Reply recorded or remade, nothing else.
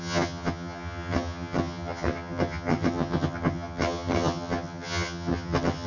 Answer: remade